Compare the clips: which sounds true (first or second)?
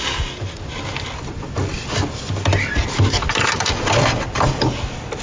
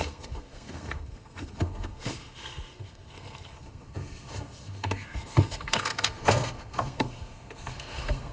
first